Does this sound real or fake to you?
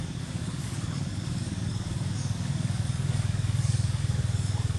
fake